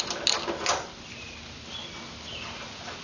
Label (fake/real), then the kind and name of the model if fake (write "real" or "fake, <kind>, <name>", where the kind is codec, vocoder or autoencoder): real